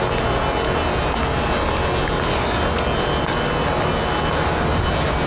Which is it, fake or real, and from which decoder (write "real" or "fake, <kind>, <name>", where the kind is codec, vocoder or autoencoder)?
real